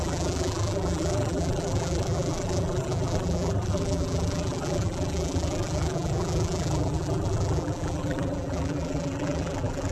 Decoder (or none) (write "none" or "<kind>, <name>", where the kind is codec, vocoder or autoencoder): vocoder, BigVGAN v2